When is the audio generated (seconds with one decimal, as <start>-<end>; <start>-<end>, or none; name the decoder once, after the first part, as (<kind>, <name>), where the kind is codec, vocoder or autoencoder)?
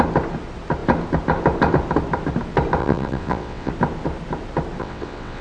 2.8-3.7 (vocoder, WaveNeXt); 4.8-5.4